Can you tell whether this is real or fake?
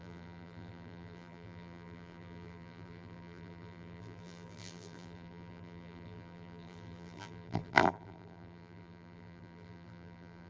fake